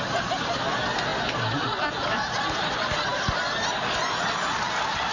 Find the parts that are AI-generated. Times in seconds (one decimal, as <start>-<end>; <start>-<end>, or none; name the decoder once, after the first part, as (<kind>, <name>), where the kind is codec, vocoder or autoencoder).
none